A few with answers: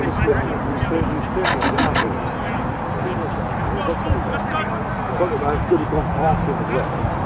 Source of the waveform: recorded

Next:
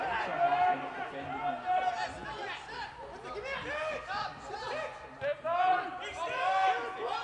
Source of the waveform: recorded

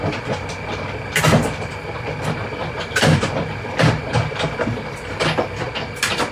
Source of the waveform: recorded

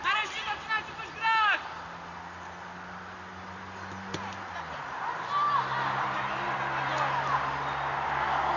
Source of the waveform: recorded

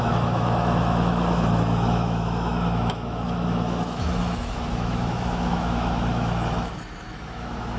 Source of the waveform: remade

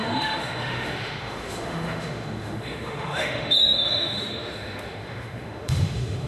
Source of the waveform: remade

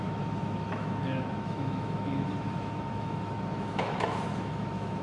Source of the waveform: remade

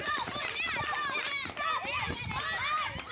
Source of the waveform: recorded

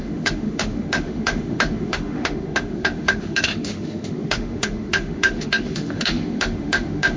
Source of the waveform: remade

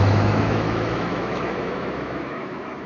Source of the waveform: remade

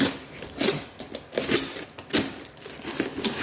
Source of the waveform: recorded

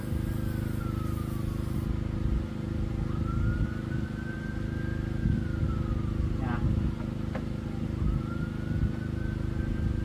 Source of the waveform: recorded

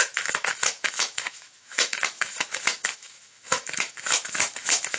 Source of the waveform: remade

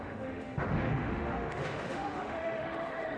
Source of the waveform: remade